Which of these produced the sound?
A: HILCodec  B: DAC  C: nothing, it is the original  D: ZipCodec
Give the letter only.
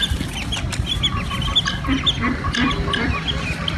C